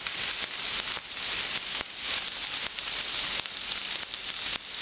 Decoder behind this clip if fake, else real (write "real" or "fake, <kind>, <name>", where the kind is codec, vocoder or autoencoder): fake, vocoder, BigVGAN v2